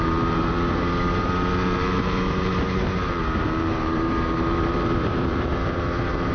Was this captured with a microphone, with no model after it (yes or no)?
no